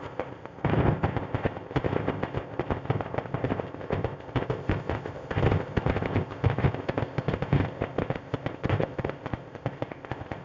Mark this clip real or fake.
fake